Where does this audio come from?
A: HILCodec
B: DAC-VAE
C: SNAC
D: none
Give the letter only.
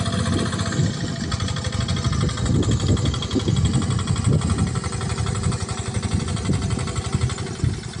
D